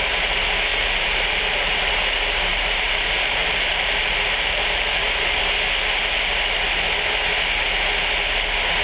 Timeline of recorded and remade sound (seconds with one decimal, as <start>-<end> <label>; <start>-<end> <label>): 0.0-0.7 recorded; 0.7-1.9 remade; 1.9-2.5 recorded; 2.5-5.4 remade; 5.4-8.8 recorded